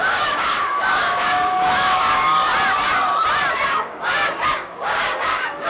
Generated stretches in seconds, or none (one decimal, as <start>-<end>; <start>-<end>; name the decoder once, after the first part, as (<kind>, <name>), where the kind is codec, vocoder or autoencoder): 0.0-2.4 (codec, DAC); 3.5-5.7